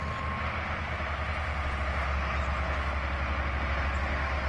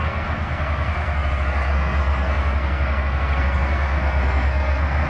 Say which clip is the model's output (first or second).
second